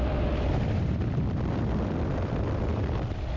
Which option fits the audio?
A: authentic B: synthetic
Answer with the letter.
B